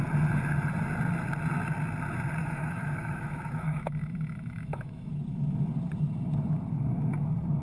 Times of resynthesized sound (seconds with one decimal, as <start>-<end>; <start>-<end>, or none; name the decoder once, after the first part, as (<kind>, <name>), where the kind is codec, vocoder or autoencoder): 2.4-5.1 (autoencoder, DAC-VAE)